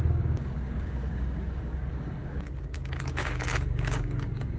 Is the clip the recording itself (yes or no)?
no